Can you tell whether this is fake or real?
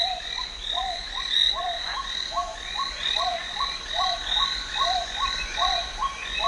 fake